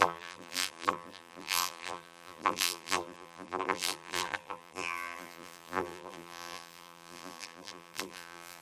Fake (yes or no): yes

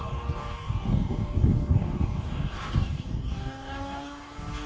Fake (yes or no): yes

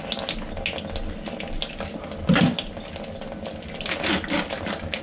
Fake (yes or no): no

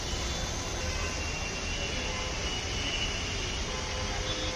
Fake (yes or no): no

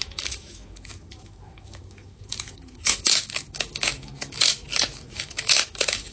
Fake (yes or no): yes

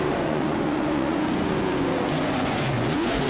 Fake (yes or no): yes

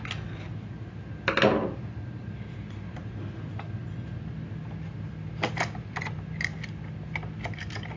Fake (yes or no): no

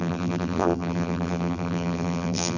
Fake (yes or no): yes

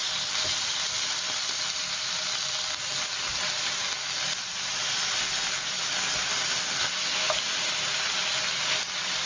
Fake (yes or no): no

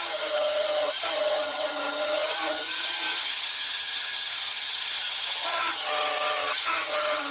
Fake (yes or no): yes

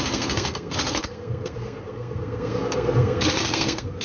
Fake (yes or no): yes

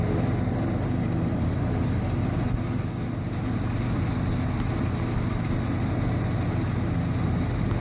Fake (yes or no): no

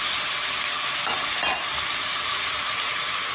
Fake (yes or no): no